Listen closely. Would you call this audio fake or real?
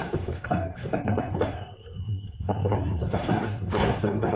fake